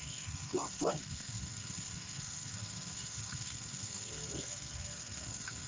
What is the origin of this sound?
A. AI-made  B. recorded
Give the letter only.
A